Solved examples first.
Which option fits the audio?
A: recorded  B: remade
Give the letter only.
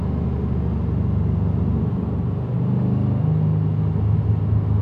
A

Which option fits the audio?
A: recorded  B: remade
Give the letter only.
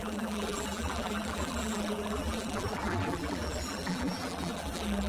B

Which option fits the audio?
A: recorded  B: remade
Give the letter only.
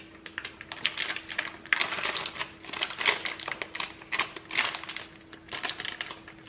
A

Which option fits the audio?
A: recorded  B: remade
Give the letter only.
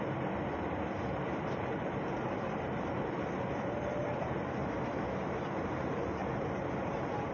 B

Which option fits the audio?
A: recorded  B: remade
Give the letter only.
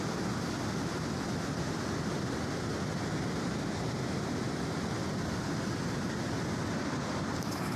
A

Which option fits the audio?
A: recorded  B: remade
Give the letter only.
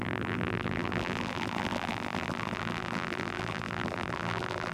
B